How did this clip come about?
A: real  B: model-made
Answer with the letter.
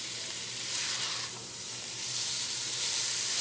B